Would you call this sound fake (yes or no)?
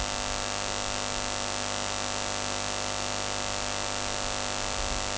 no